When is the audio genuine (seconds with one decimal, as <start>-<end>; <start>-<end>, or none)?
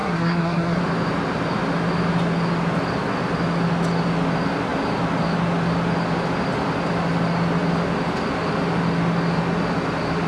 0.8-10.3